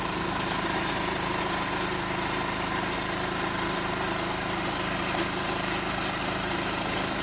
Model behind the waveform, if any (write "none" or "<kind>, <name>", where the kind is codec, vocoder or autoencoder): vocoder, BigVGAN v2